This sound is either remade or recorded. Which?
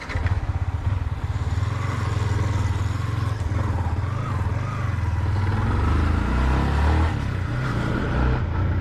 recorded